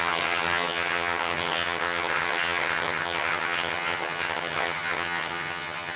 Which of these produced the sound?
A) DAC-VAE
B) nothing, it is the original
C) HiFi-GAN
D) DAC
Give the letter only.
C